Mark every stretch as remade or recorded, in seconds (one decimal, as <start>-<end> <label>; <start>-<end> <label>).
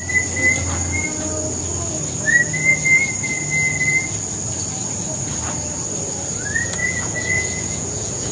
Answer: 0.0-6.8 recorded; 6.8-8.3 remade